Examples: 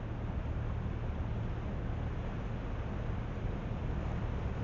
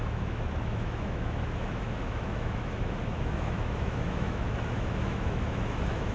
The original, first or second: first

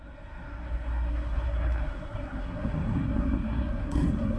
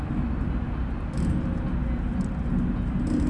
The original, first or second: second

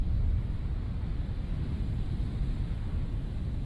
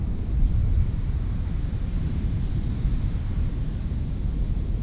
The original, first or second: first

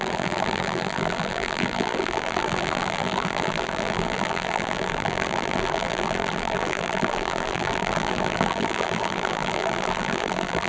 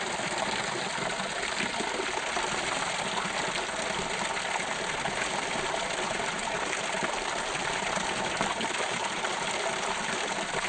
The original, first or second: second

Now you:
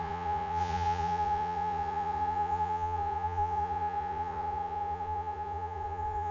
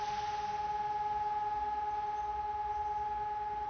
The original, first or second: second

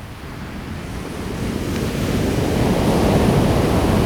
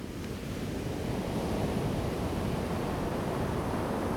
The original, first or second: first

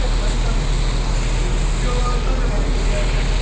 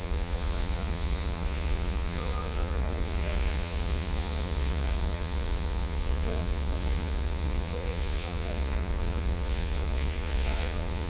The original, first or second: first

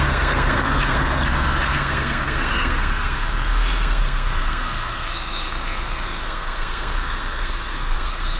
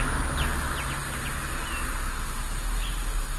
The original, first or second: second